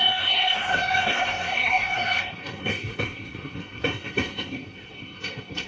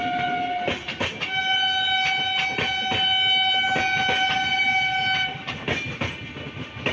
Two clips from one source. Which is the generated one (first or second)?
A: first